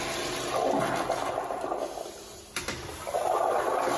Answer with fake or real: real